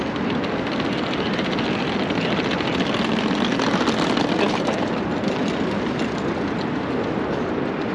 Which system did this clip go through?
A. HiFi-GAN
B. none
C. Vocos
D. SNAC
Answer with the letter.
B